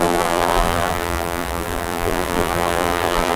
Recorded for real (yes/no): no